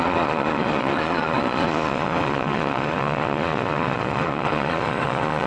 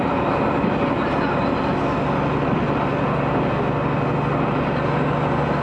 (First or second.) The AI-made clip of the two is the first